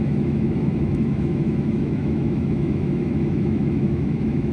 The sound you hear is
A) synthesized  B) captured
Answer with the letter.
A